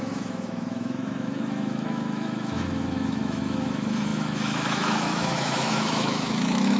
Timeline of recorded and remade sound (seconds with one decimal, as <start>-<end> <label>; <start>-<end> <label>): 0.0-6.8 remade